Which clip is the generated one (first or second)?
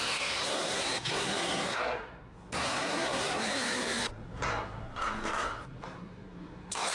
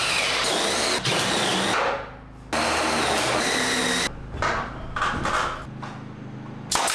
first